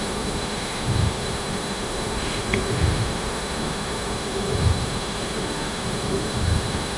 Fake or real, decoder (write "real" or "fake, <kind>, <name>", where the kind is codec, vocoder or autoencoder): fake, autoencoder, DAC-VAE